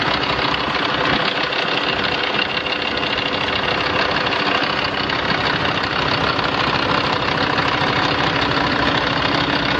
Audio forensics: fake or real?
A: real